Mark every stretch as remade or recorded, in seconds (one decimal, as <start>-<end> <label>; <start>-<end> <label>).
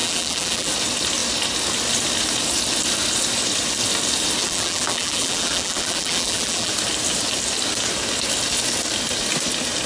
0.0-0.7 remade; 0.7-4.4 recorded; 4.4-6.7 remade; 6.7-9.9 recorded